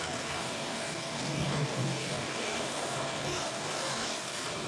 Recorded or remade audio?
remade